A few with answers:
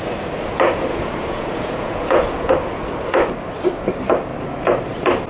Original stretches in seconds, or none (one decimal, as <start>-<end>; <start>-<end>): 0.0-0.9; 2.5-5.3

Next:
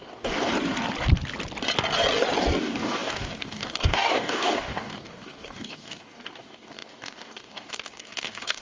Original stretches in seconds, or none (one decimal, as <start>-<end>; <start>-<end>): 0.5-2.6

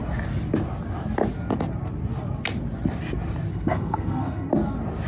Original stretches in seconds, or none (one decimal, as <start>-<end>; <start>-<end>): 0.0-3.5; 4.5-5.1

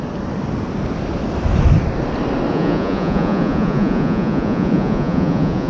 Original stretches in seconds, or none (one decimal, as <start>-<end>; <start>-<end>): 0.0-2.5

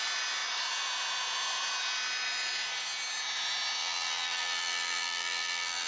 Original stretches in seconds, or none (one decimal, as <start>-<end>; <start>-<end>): 0.0-3.8

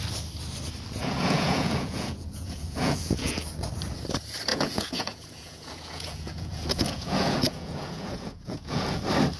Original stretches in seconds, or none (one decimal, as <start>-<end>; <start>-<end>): 0.0-1.0; 3.4-4.5; 9.0-9.4

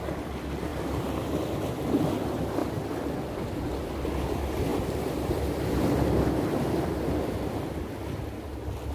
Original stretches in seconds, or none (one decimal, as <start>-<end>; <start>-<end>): 0.0-0.7; 1.2-2.6; 3.7-4.7; 7.6-8.9

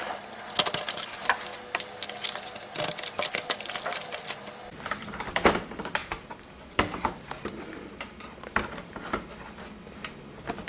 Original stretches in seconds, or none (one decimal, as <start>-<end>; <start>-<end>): 0.0-6.0; 7.6-10.7